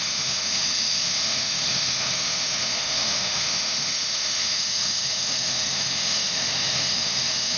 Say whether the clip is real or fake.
fake